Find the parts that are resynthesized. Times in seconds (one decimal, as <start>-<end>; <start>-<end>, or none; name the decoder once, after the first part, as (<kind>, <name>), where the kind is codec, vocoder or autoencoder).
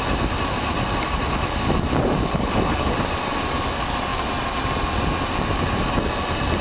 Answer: 2.3-2.9 (codec, HILCodec)